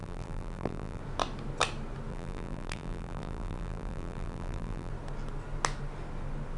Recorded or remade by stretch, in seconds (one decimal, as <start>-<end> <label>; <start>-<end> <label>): 0.0-1.0 remade; 1.0-2.1 recorded; 2.1-4.9 remade; 4.9-6.6 recorded